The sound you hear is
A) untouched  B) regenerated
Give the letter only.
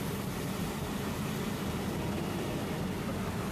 A